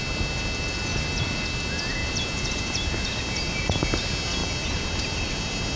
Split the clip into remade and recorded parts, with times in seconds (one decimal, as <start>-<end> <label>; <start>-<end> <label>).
0.0-0.9 recorded; 0.9-1.4 remade; 1.4-4.4 recorded; 4.4-5.8 remade